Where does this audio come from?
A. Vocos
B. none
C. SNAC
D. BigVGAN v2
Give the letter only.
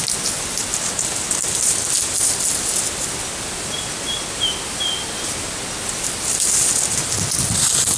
B